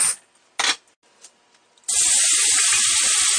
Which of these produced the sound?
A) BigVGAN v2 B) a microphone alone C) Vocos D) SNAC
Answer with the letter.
B